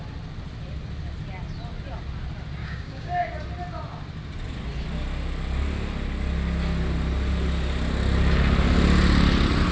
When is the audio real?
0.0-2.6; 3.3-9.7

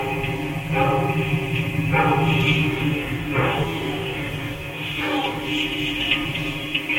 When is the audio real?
0.0-2.6; 5.4-7.0

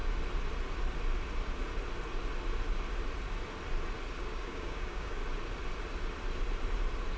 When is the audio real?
0.0-4.2; 5.2-7.2

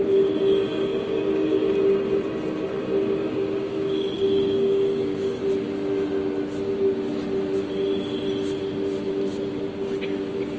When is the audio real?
0.0-0.9; 1.7-3.2; 5.4-10.6

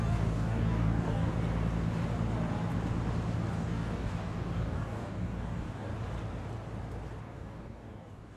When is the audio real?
1.3-3.5; 5.9-7.2